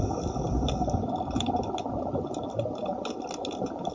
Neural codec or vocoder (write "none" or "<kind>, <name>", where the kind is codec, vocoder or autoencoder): none